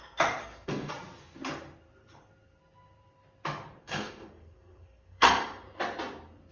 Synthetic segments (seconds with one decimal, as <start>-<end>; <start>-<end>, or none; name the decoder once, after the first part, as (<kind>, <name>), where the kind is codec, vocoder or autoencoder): 0.4-0.9 (codec, SNAC); 3.8-5.4